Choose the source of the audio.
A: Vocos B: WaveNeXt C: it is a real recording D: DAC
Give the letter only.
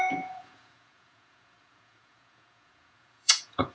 A